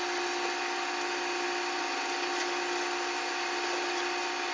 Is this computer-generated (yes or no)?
no